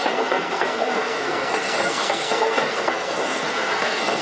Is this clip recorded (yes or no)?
no